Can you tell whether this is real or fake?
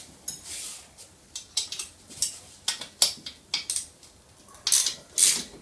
real